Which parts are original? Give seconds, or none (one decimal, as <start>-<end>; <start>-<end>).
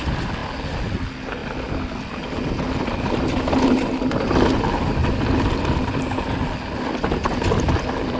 0.0-8.2